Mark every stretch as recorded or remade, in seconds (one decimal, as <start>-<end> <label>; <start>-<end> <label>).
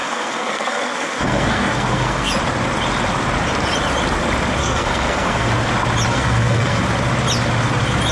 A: 0.0-2.3 remade; 2.3-4.6 recorded; 4.6-5.5 remade; 5.5-6.1 recorded; 6.1-6.8 remade; 6.8-8.1 recorded